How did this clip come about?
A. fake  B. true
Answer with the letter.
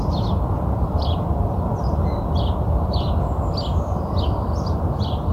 A